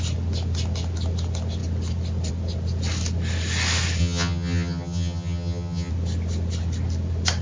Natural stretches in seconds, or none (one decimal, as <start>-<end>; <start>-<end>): 0.0-4.0; 5.9-7.4